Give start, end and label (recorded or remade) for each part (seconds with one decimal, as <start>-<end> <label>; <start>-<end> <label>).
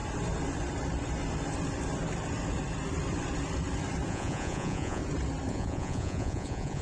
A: 0.0-4.1 recorded; 4.1-5.0 remade; 5.0-5.5 recorded; 5.5-6.8 remade